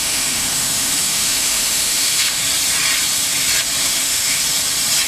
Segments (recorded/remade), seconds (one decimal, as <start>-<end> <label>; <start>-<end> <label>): 0.0-2.4 remade; 2.4-3.8 recorded; 3.8-4.4 remade; 4.4-5.1 recorded